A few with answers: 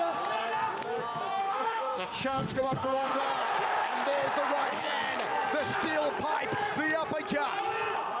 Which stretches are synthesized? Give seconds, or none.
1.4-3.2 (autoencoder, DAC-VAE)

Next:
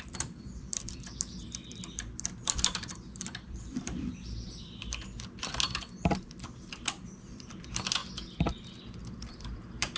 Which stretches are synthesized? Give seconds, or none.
0.0-8.0 (vocoder, BigVGAN v2); 9.1-10.0

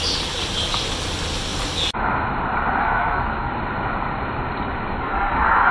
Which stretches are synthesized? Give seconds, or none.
2.8-3.5 (codec, SNAC); 5.0-5.7